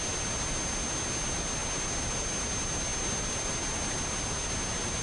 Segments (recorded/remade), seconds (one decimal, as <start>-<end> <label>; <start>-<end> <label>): 0.0-5.0 recorded